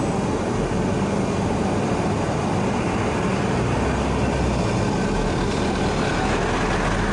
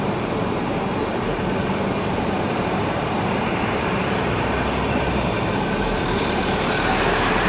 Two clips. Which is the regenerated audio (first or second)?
second